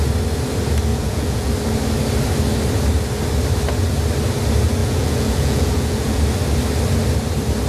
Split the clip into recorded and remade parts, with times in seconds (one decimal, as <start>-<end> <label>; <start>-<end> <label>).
0.0-0.9 recorded; 0.9-1.5 remade; 1.5-4.8 recorded; 4.8-6.2 remade; 6.2-7.7 recorded